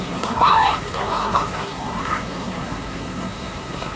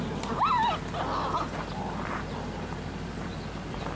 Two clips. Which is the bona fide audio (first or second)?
second